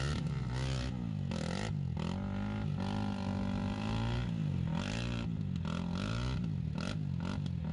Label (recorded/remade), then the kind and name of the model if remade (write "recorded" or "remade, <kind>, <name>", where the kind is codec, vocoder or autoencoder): recorded